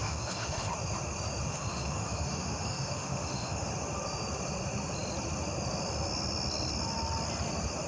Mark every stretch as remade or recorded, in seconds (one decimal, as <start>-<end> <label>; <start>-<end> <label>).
0.0-0.7 remade; 0.7-1.5 recorded; 1.5-3.7 remade; 3.7-7.9 recorded